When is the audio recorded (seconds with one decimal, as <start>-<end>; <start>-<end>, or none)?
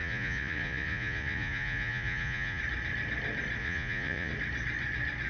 2.6-3.6; 4.3-5.3